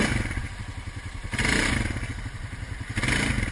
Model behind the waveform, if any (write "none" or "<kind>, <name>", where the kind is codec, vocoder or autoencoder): none